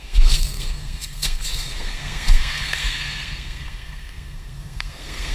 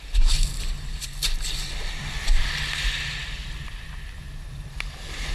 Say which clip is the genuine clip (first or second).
second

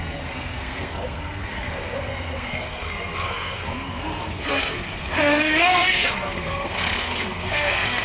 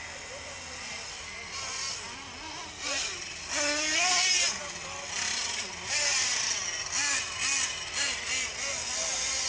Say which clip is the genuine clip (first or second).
second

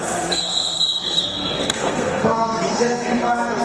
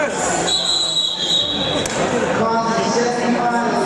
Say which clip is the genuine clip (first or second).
second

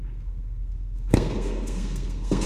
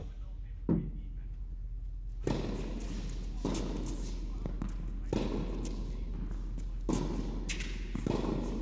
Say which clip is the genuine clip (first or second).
second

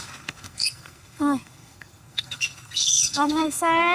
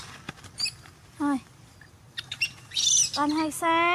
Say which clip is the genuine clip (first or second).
second